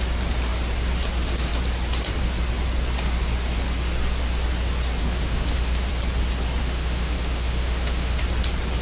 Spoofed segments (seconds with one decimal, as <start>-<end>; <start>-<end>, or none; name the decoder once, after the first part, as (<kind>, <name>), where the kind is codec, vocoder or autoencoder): 5.0-5.9 (autoencoder, DAC-VAE); 6.6-8.2